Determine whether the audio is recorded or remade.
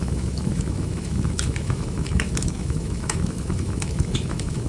remade